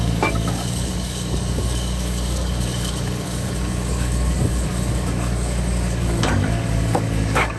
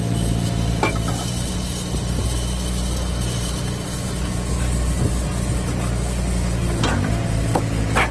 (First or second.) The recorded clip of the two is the second